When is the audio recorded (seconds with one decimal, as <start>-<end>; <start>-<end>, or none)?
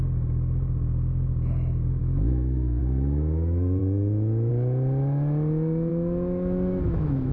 0.0-2.0; 2.8-3.8; 4.5-5.9